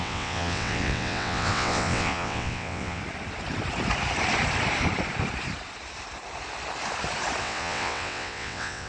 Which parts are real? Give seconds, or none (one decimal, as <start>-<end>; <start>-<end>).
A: 3.0-7.4